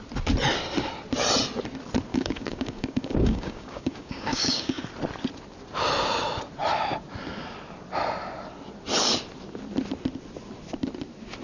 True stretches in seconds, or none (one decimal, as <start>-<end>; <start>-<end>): 0.0-2.1; 4.8-11.4